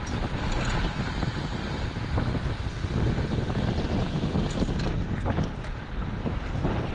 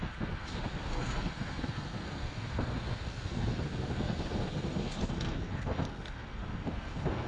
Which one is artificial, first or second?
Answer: second